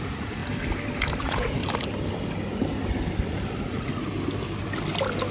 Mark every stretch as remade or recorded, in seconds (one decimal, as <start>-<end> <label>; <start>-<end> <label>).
0.0-0.4 remade; 0.4-1.2 recorded; 1.2-1.6 remade; 1.6-3.6 recorded; 3.6-4.1 remade; 4.1-5.3 recorded